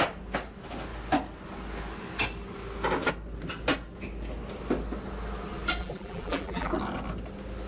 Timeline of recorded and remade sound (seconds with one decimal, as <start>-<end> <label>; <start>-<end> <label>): 0.0-5.8 recorded; 5.8-6.7 remade; 6.7-7.7 recorded